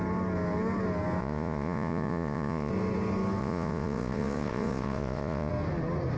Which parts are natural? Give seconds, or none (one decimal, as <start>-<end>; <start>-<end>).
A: 0.0-1.2; 2.7-3.4; 5.5-6.2